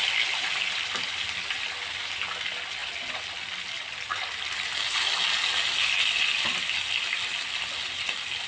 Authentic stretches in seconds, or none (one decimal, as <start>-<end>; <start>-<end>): 0.0-8.5